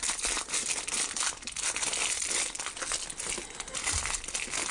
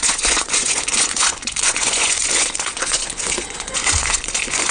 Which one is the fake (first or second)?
second